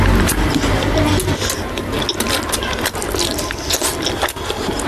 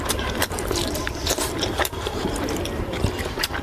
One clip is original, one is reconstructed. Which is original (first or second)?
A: first